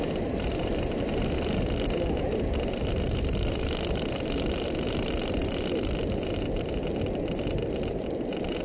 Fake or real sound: real